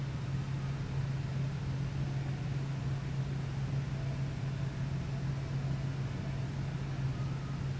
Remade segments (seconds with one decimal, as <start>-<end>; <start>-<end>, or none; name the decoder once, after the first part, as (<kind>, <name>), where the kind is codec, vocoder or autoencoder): none